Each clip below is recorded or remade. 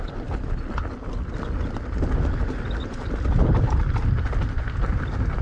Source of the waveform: recorded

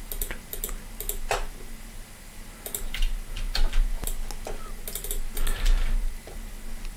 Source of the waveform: recorded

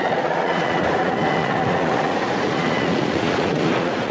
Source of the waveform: remade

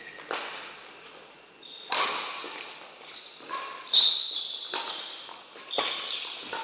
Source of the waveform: recorded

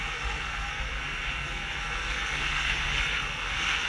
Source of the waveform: remade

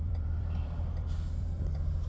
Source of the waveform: remade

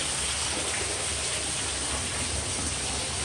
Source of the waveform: recorded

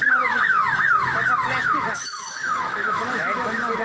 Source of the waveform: remade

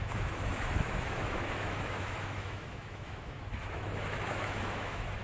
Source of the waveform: remade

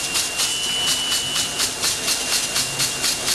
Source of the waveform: recorded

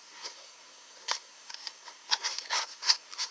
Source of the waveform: remade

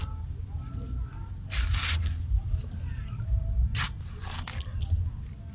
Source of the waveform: recorded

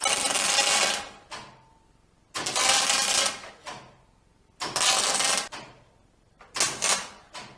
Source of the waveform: recorded